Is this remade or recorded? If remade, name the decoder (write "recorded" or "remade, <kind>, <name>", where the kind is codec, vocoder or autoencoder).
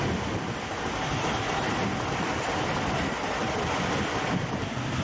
recorded